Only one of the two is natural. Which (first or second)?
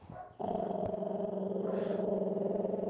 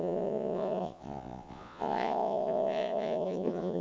first